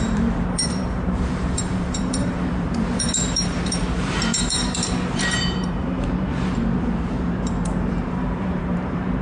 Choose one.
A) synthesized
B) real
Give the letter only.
A